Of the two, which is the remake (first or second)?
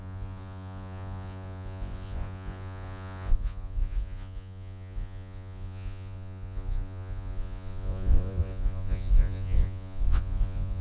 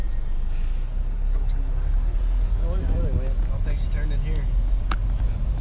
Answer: first